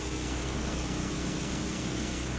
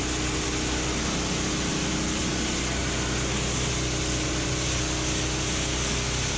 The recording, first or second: second